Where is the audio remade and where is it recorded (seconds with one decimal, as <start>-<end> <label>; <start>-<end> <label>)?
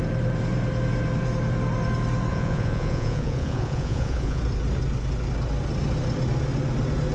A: 0.0-2.3 recorded; 2.3-4.4 remade; 4.4-7.1 recorded